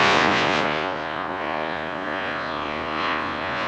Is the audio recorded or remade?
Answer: remade